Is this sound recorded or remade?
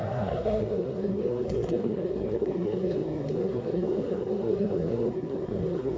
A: remade